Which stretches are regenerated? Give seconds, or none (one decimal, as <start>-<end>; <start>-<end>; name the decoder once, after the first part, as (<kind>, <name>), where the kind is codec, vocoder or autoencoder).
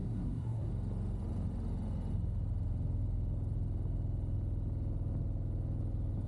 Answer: 0.0-0.7 (codec, SNAC)